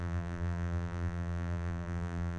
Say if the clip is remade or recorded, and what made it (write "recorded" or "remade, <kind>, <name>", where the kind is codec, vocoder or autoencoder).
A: remade, vocoder, BigVGAN v2